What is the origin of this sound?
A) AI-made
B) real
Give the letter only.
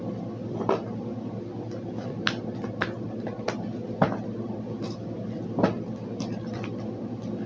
B